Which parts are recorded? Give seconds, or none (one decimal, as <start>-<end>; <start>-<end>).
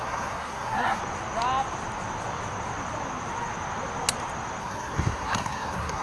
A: 1.0-4.6